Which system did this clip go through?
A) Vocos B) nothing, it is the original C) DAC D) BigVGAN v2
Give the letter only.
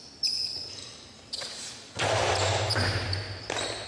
B